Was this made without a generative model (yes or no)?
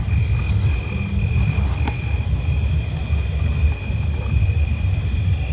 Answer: yes